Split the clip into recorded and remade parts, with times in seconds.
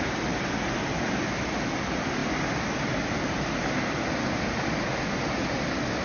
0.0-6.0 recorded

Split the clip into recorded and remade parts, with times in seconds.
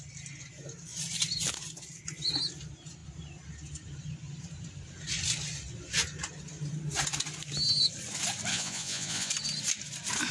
0.0-8.5 recorded; 8.5-9.3 remade; 9.3-10.3 recorded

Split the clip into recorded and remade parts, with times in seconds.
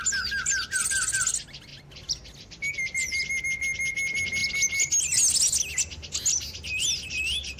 0.0-7.6 recorded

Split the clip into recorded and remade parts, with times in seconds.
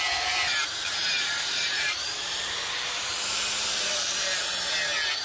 0.0-1.0 recorded; 1.0-4.1 remade; 4.1-5.2 recorded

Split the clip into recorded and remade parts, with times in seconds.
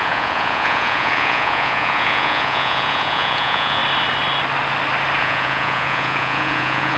0.0-3.8 remade; 3.8-5.2 recorded; 5.2-7.0 remade